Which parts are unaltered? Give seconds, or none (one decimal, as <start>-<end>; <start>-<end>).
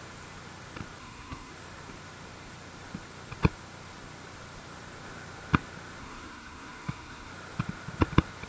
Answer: 0.0-1.0; 1.5-6.0; 7.3-8.5